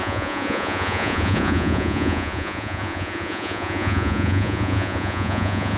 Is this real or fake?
fake